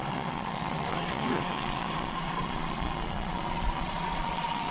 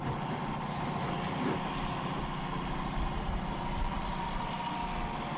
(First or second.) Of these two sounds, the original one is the second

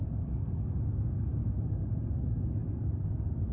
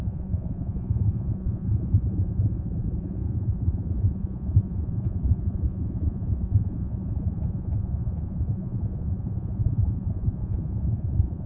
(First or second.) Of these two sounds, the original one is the first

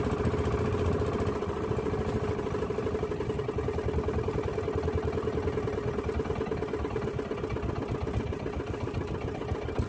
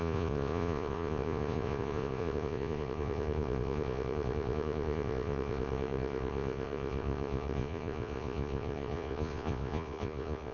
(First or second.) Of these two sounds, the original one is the first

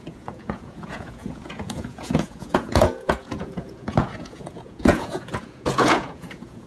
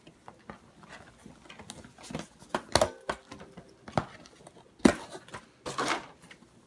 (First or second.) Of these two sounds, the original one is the second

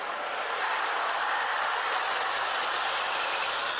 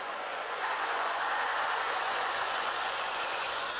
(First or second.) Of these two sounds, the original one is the first